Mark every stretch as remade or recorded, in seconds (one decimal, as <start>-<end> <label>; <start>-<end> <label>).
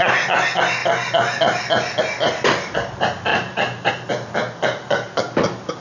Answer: 0.0-3.3 recorded; 3.3-3.9 remade; 3.9-5.8 recorded